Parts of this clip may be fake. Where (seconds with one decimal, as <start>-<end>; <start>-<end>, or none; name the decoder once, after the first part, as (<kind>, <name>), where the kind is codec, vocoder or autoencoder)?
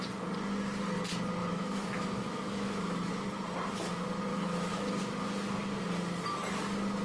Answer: 1.4-3.1 (autoencoder, DAC-VAE); 4.3-5.0